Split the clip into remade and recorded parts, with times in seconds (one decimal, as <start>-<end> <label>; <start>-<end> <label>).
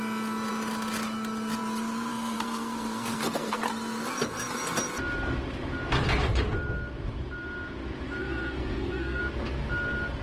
0.0-2.1 recorded; 2.1-3.7 remade; 3.7-8.2 recorded; 8.2-9.2 remade; 9.2-10.2 recorded